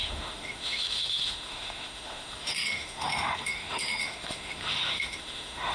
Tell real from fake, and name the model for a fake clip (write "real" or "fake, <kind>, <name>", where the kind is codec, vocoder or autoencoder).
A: fake, autoencoder, DAC-VAE